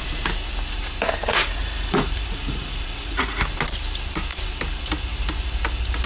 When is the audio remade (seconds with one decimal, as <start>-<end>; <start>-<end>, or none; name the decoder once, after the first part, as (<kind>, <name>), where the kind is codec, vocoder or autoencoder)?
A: 1.3-3.4 (vocoder, Vocos)